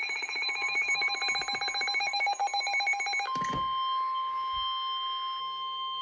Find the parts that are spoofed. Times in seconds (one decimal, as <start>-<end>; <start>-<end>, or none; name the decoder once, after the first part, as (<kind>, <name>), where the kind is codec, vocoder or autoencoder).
0.0-1.2 (autoencoder, DAC-VAE); 2.0-2.4; 5.4-6.0